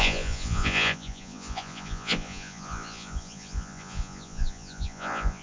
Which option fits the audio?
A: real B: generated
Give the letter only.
B